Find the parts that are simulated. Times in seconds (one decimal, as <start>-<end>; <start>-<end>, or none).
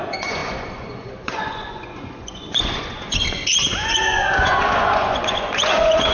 0.0-6.1